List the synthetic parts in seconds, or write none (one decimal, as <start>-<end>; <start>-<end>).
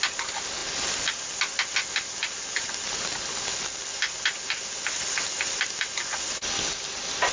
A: none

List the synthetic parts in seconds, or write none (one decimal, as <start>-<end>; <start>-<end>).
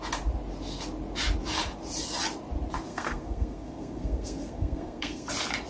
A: 2.9-5.3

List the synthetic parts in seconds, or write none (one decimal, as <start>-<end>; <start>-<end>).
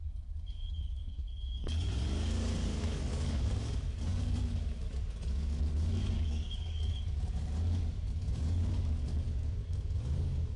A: 0.0-10.6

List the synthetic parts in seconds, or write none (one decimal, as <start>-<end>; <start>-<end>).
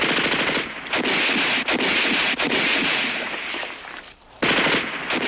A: 1.9-3.4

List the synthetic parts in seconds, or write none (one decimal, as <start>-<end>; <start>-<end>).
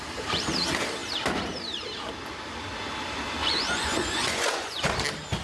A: 3.4-4.9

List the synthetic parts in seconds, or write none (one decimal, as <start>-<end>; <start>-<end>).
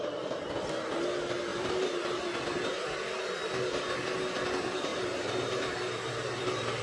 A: 1.5-2.2; 4.9-6.8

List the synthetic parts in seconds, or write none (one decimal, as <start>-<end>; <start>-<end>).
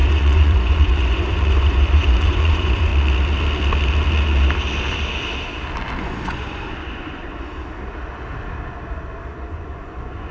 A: 0.0-2.9; 6.0-7.5; 9.3-10.3